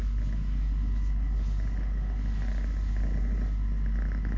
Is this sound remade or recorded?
recorded